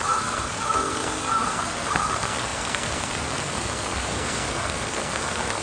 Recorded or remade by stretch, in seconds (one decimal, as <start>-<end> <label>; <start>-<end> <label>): 0.0-5.6 remade

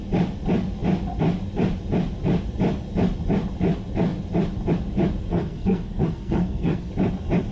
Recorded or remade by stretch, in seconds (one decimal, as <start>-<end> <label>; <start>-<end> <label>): 0.0-5.3 recorded; 5.3-6.9 remade; 6.9-7.5 recorded